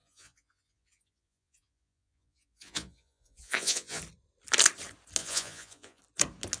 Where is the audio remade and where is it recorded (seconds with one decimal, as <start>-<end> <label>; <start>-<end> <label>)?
0.0-4.0 remade; 4.0-5.2 recorded; 5.2-6.0 remade; 6.0-6.6 recorded